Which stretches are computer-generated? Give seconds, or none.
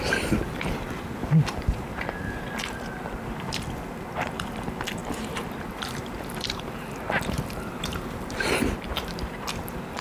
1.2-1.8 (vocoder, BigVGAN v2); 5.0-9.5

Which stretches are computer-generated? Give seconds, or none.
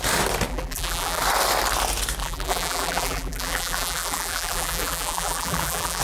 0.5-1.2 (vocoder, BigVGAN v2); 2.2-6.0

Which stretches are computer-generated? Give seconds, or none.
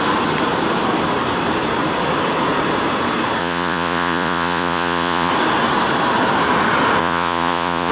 3.4-5.3 (vocoder, Vocos); 7.0-7.9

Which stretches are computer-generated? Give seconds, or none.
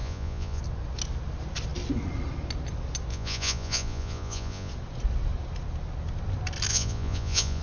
0.0-0.6 (vocoder, Vocos); 3.1-4.7; 6.7-7.6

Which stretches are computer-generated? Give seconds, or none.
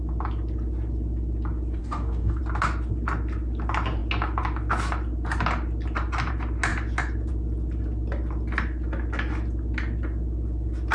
1.8-2.4 (codec, DAC)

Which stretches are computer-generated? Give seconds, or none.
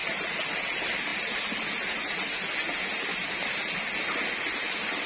none